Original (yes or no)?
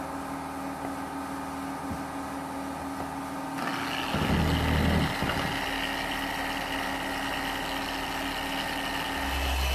yes